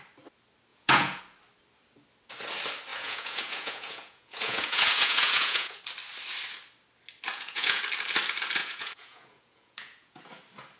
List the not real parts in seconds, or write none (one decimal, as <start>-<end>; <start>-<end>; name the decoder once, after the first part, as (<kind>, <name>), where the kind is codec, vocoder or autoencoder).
0.7-1.2 (vocoder, Vocos); 2.9-5.8; 7.3-7.8; 8.6-10.4